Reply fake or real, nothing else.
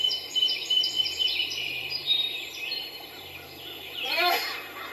fake